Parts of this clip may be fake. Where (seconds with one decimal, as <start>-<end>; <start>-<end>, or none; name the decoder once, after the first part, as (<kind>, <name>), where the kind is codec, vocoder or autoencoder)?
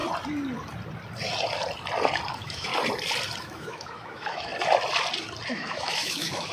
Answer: 2.3-2.7 (autoencoder, DAC-VAE); 3.4-4.5; 5.5-6.5